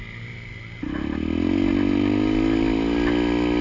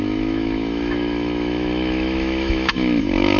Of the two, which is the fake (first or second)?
second